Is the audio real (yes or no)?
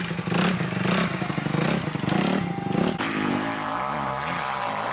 yes